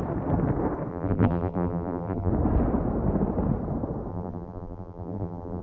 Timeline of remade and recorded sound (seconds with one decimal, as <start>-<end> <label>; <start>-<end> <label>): 0.0-0.9 recorded; 0.9-2.3 remade; 2.3-4.1 recorded; 4.1-5.6 remade